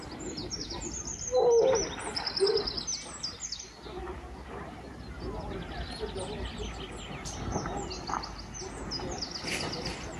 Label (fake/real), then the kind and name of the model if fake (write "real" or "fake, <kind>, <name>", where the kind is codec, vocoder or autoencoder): real